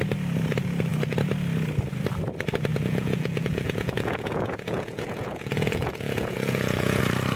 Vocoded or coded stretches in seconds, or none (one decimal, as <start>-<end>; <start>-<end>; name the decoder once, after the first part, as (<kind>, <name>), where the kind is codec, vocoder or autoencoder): 2.7-7.0 (vocoder, Vocos)